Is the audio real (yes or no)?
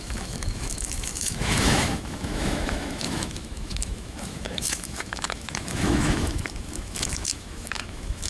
no